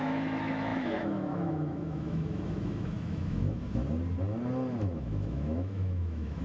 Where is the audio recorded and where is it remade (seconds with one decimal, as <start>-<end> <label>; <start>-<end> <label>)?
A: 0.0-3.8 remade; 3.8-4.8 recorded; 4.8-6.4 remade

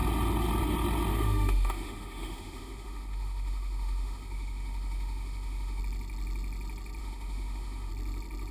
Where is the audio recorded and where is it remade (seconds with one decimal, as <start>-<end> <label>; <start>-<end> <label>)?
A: 0.0-1.1 recorded; 1.1-5.8 remade; 5.8-7.0 recorded; 7.0-7.9 remade; 7.9-8.5 recorded

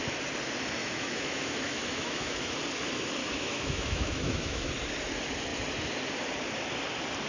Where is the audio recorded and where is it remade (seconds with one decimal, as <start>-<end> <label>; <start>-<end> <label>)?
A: 0.0-0.8 recorded; 0.8-2.6 remade; 2.6-3.2 recorded; 3.2-4.7 remade; 4.7-7.3 recorded

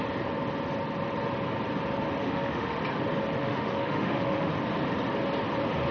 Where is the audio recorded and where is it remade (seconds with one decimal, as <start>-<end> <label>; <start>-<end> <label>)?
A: 0.0-2.2 recorded; 2.2-2.7 remade; 2.7-3.4 recorded; 3.4-4.5 remade; 4.5-5.9 recorded

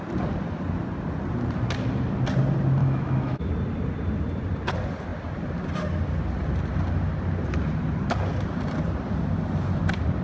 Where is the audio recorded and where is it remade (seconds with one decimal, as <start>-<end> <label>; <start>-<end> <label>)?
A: 0.0-2.8 recorded; 2.8-3.5 remade; 3.5-10.2 recorded

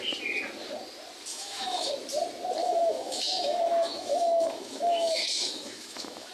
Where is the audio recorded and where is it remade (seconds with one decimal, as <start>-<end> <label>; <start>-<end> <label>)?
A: 0.0-1.3 recorded; 1.3-1.9 remade; 1.9-2.6 recorded; 2.6-6.3 remade

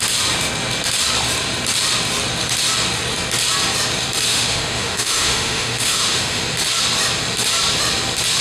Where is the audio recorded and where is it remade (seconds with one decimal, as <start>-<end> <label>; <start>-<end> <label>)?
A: 0.0-4.3 recorded; 4.3-6.4 remade; 6.4-8.4 recorded